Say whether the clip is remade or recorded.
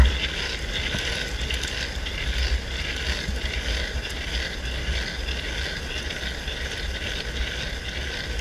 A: recorded